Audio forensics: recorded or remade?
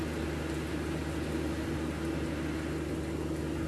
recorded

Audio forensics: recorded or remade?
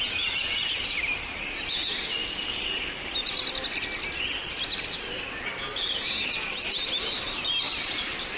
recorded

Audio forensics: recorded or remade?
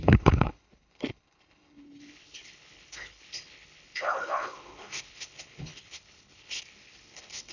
remade